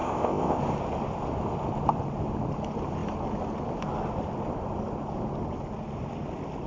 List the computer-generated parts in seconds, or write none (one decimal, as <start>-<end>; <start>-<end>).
0.0-0.6